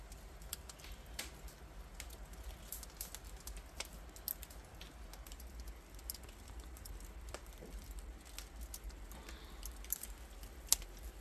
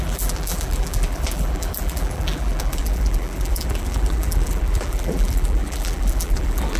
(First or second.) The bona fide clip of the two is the first